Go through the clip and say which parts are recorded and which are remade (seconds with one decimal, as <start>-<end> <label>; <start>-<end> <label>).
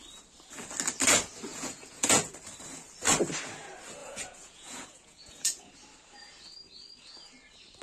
0.0-1.5 recorded; 1.5-2.3 remade; 2.3-4.0 recorded; 4.0-5.7 remade; 5.7-7.8 recorded